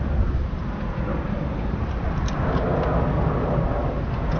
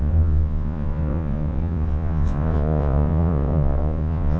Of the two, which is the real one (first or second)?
first